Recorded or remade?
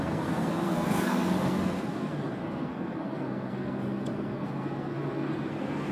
remade